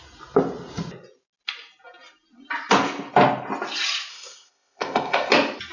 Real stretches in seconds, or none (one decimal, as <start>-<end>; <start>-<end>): 0.0-4.1; 5.3-5.7